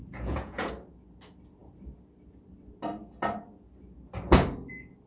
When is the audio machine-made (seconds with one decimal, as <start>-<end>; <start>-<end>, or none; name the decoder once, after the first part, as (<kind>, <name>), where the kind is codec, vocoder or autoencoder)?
0.0-0.7 (vocoder, Vocos)